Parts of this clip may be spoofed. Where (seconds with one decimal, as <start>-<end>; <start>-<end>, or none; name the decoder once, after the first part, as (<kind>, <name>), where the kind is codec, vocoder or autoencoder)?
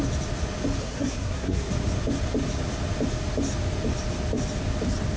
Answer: 0.8-1.7 (codec, SNAC)